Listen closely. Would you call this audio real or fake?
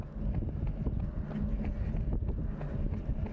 real